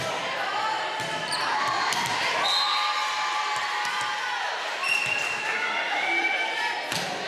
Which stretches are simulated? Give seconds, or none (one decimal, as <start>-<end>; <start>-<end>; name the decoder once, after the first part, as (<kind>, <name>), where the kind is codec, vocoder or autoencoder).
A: none